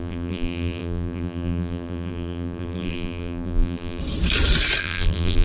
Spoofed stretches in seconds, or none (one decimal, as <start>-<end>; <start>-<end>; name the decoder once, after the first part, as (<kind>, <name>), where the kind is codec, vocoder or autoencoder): 0.0-4.0 (vocoder, BigVGAN v2); 4.8-5.4